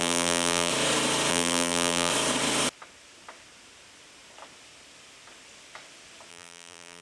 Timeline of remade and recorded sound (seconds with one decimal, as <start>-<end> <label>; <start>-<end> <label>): 0.0-0.7 remade; 0.7-1.3 recorded; 1.3-2.1 remade; 2.1-6.3 recorded; 6.3-7.0 remade